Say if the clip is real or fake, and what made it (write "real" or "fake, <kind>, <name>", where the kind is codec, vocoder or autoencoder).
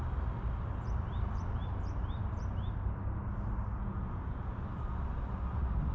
real